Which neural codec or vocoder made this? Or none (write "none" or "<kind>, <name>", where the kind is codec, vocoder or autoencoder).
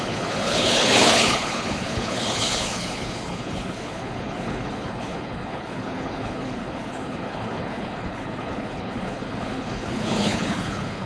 codec, HILCodec